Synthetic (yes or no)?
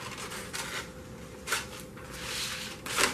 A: no